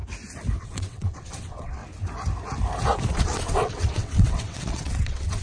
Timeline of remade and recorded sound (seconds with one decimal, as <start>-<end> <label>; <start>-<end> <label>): 0.0-0.6 recorded; 0.6-1.8 remade; 1.8-3.1 recorded; 3.1-5.4 remade